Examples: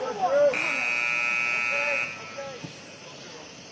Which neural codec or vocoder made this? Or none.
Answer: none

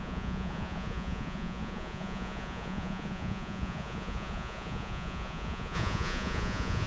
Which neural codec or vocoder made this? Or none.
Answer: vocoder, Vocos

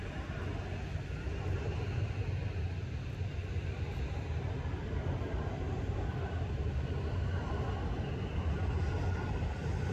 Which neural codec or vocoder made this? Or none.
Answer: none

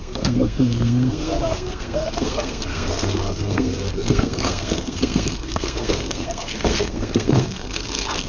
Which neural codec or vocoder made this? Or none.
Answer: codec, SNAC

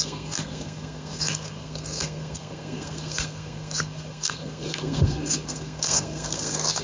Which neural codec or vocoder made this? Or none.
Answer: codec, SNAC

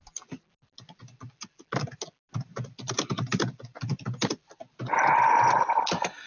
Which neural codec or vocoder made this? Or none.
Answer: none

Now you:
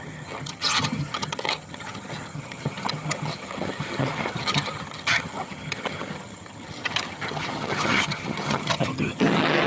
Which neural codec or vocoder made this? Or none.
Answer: vocoder, HiFi-GAN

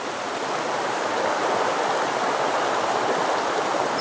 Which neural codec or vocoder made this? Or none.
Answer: none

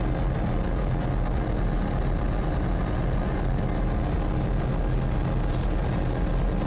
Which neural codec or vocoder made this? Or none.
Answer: none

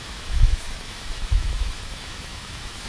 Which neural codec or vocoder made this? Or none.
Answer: autoencoder, DAC-VAE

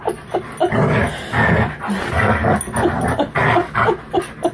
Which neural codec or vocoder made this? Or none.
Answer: none